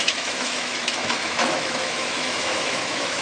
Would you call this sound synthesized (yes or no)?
yes